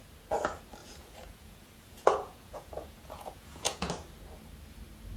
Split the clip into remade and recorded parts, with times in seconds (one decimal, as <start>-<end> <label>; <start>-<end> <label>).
0.0-0.8 recorded; 0.8-3.9 remade; 3.9-5.2 recorded